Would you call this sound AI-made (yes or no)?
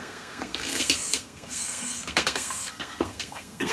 yes